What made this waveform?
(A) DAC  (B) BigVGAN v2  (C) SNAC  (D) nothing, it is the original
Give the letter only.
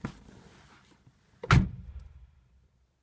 D